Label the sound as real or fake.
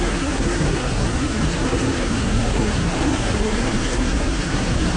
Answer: fake